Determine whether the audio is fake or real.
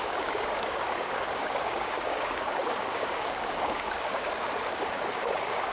fake